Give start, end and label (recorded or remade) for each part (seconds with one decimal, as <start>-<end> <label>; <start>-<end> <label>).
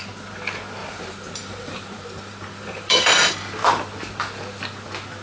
0.0-0.8 recorded; 0.8-3.3 remade; 3.3-5.2 recorded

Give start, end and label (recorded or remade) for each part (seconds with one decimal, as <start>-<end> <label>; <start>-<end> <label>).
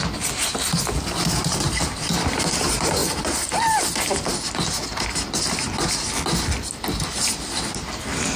0.0-8.4 recorded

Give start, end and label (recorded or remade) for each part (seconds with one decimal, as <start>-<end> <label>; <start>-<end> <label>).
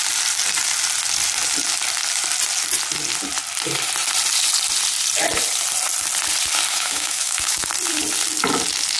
0.0-6.7 recorded; 6.7-7.7 remade; 7.7-9.0 recorded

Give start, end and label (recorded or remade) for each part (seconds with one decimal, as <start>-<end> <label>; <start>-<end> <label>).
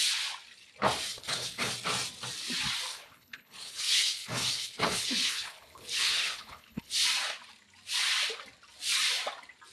0.0-1.1 recorded; 1.1-1.7 remade; 1.7-2.9 recorded; 2.9-6.9 remade; 6.9-9.7 recorded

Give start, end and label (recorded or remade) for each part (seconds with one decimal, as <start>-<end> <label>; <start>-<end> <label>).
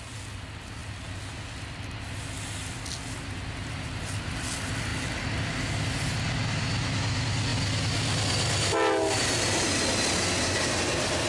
0.0-11.3 recorded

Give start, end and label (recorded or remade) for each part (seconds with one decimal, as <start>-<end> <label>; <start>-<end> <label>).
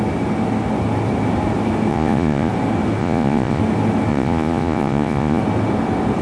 0.0-1.9 recorded; 1.9-2.5 remade; 2.5-3.0 recorded; 3.0-3.6 remade; 3.6-4.1 recorded; 4.1-5.4 remade; 5.4-6.2 recorded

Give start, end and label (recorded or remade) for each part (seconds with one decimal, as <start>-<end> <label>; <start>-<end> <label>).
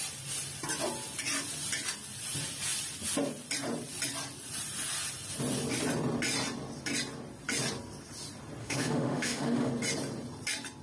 0.0-8.6 recorded; 8.6-9.7 remade; 9.7-10.8 recorded